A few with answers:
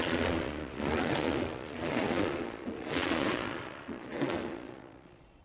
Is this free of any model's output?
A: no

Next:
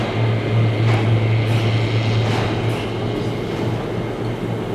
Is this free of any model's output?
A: yes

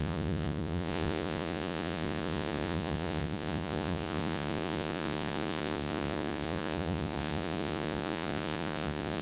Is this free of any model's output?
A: no